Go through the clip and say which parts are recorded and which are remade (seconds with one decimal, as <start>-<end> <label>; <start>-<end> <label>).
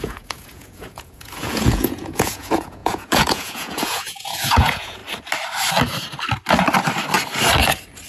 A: 0.0-5.0 remade; 5.0-8.1 recorded